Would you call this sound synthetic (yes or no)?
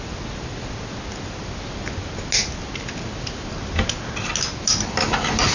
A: no